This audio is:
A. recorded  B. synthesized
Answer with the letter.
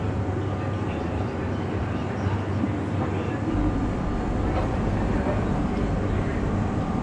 A